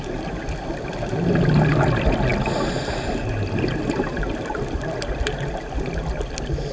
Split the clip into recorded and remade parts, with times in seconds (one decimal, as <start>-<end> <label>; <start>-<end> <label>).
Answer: 0.0-6.7 recorded